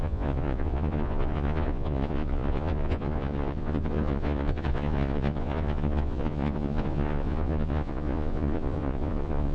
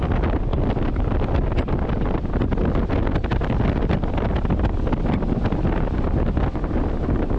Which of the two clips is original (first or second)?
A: second